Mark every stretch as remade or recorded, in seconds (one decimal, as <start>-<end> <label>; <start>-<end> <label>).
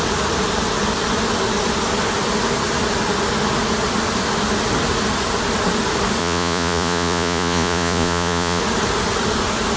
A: 0.0-6.2 recorded; 6.2-8.6 remade; 8.6-9.8 recorded